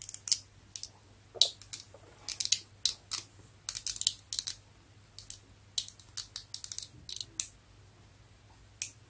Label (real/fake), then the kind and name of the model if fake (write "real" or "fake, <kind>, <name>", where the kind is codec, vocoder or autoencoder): real